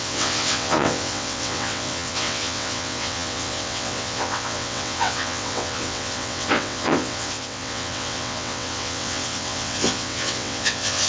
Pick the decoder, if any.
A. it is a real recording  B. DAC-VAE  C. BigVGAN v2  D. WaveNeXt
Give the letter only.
D